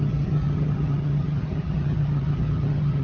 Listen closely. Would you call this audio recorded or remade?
remade